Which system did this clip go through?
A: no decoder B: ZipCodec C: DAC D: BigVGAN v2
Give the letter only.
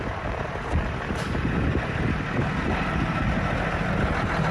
A